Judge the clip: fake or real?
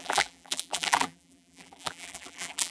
fake